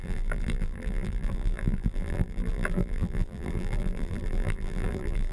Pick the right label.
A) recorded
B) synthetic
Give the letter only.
B